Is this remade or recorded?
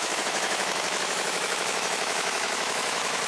remade